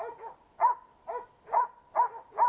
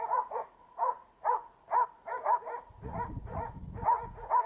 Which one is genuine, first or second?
first